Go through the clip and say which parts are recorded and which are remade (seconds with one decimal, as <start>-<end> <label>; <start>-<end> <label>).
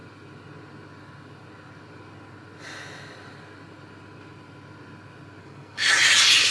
0.0-5.4 recorded; 5.4-5.9 remade; 5.9-6.5 recorded